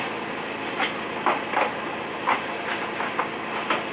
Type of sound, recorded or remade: recorded